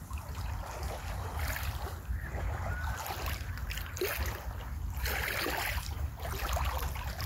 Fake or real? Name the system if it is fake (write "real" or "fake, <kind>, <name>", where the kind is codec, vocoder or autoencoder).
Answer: real